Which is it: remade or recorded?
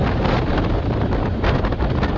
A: recorded